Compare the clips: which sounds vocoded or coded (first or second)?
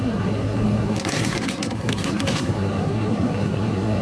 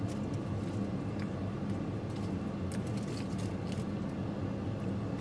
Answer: first